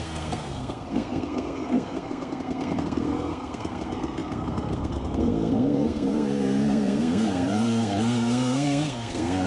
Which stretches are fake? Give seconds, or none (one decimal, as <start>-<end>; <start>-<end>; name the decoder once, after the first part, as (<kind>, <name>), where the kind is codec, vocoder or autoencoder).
0.0-9.5 (codec, SNAC)